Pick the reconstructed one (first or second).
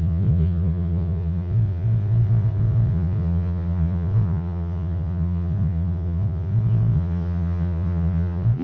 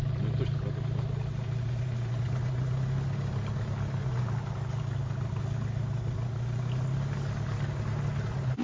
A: first